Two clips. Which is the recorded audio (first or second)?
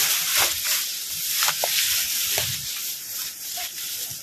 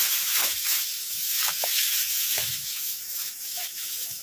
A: first